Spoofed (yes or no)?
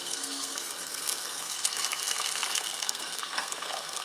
yes